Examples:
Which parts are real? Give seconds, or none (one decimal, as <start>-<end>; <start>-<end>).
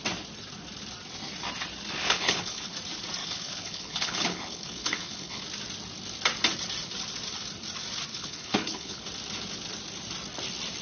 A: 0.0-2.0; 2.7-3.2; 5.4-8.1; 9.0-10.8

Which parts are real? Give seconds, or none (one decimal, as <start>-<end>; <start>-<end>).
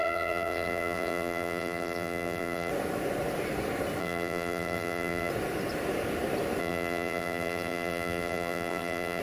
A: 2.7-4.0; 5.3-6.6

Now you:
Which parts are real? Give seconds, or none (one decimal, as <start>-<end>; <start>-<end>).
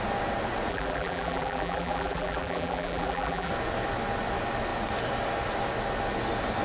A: 0.0-0.7; 3.5-6.6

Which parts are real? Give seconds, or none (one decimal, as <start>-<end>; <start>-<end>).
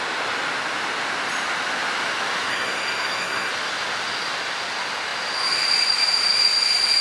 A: 0.0-2.5; 3.5-7.0